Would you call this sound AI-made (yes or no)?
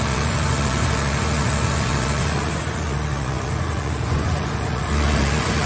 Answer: yes